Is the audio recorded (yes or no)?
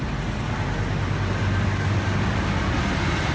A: yes